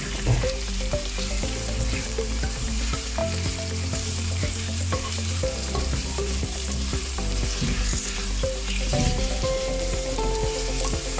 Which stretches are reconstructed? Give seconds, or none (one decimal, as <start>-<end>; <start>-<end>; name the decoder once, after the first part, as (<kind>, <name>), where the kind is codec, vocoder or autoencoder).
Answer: 0.0-3.2 (vocoder, BigVGAN v2); 3.9-11.2